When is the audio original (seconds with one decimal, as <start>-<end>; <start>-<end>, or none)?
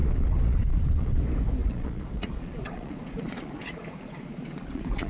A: 1.2-1.6